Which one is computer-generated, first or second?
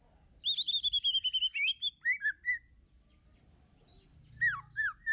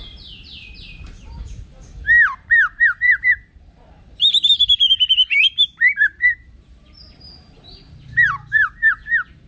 second